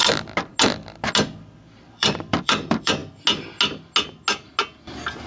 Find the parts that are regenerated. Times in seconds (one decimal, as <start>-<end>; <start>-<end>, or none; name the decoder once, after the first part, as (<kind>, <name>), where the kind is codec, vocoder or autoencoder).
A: 1.4-3.0 (vocoder, BigVGAN v2)